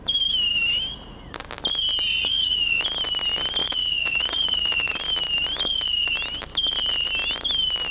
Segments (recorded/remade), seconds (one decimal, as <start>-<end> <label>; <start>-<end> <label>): 0.0-0.9 recorded; 0.9-1.4 remade; 1.4-2.1 recorded; 2.1-2.8 remade; 2.8-3.6 recorded; 3.6-5.0 remade; 5.0-7.9 recorded